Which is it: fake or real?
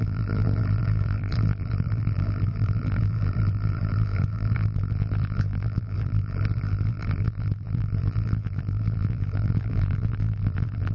fake